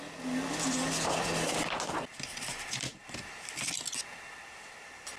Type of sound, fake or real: real